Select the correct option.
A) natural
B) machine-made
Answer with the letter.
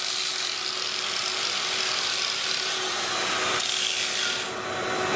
A